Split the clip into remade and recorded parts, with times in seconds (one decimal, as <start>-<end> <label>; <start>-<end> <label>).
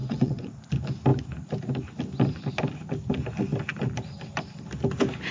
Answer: 0.0-0.6 remade; 0.6-5.3 recorded